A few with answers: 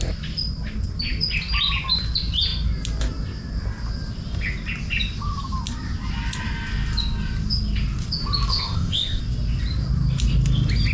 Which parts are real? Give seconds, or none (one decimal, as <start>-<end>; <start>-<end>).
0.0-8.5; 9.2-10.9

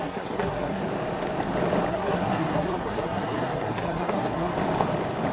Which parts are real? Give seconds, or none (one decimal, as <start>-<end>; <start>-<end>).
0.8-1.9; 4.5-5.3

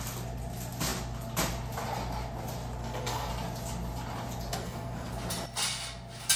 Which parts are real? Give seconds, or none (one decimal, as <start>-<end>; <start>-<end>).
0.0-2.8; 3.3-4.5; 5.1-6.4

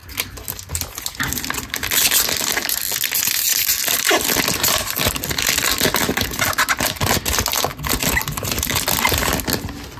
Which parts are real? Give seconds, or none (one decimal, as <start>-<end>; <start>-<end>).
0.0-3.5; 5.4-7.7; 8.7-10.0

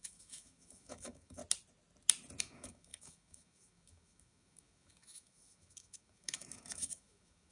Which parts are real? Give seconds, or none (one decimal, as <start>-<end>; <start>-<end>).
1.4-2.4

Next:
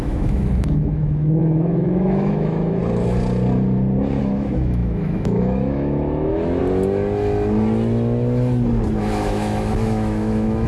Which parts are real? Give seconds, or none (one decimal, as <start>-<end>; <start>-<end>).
2.8-4.2; 6.6-9.0

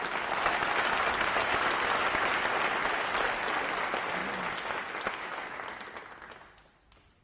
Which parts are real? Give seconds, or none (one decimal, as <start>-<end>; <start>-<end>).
0.0-7.2